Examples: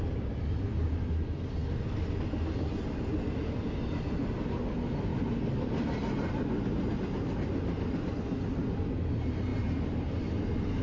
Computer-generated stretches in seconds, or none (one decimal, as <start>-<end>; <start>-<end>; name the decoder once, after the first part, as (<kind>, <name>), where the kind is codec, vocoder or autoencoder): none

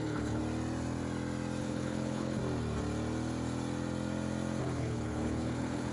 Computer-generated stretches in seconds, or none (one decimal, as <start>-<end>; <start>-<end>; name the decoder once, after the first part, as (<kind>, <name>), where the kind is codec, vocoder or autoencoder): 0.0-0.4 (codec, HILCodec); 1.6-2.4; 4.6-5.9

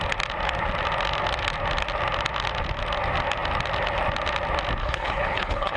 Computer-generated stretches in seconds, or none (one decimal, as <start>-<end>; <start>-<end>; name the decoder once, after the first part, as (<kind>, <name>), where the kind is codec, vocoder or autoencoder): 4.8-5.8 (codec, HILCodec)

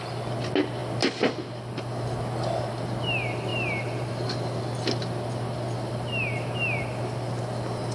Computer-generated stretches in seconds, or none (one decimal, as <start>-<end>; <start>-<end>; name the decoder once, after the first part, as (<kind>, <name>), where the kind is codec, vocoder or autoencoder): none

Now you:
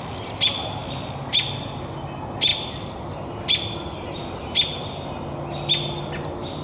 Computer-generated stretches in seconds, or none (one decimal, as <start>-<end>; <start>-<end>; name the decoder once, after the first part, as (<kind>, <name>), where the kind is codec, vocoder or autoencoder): none

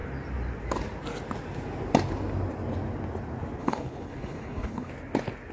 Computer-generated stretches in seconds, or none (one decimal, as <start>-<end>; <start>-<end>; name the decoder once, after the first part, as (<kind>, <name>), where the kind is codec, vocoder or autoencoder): 3.6-4.9 (codec, HILCodec)

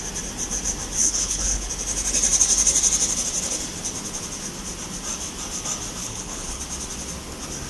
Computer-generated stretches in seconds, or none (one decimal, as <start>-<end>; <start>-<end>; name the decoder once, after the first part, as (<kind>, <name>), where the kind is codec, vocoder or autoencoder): 1.0-1.7 (codec, HILCodec); 6.0-6.6

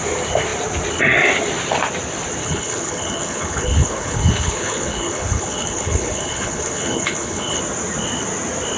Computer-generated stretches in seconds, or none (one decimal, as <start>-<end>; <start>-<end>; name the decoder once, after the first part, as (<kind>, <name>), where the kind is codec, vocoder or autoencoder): 2.4-7.6 (codec, HILCodec)